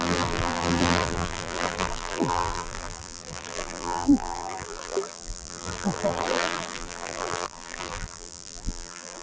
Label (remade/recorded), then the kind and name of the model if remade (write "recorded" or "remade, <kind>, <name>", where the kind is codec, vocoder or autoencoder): remade, vocoder, BigVGAN v2